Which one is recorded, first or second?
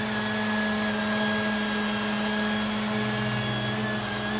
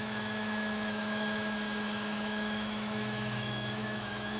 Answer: first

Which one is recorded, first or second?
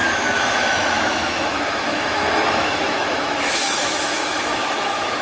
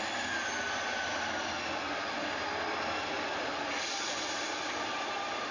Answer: second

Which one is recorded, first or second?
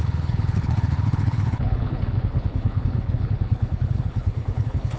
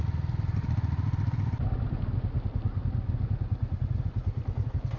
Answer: second